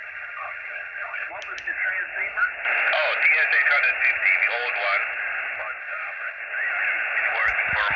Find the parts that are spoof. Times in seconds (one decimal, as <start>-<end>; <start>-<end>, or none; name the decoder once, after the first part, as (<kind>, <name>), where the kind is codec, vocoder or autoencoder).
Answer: 0.0-1.3 (vocoder, HiFi-GAN); 5.8-6.4